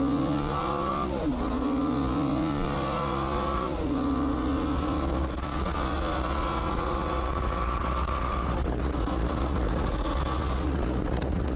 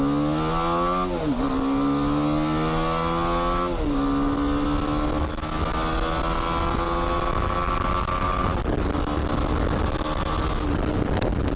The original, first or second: second